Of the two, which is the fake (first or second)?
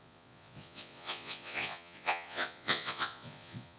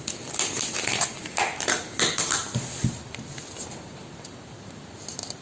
first